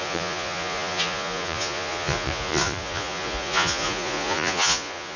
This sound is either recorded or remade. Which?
remade